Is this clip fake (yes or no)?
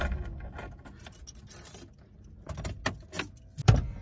no